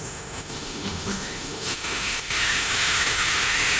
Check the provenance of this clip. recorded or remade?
remade